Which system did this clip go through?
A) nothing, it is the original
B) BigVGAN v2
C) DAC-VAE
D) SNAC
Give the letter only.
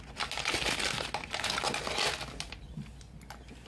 A